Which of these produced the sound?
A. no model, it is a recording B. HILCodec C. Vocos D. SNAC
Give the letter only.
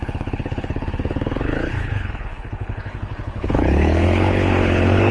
B